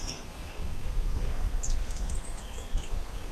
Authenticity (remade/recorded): remade